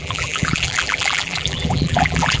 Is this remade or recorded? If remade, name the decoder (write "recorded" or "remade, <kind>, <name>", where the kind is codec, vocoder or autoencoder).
remade, vocoder, BigVGAN v2